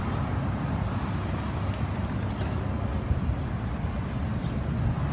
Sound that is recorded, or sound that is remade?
recorded